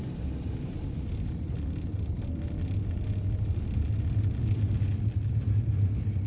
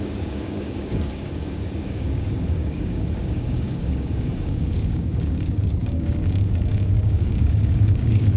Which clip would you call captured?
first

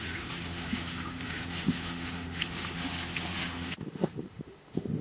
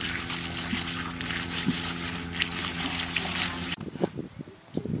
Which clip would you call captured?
second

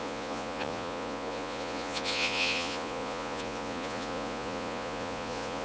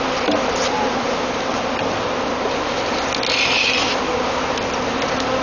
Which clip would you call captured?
second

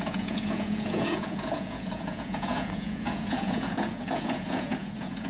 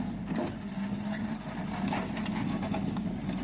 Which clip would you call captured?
second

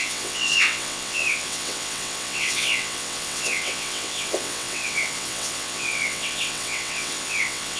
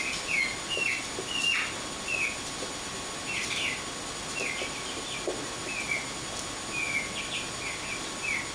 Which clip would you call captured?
second